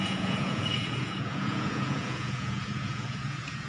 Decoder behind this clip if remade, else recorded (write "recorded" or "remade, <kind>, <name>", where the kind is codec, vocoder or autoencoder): remade, vocoder, Vocos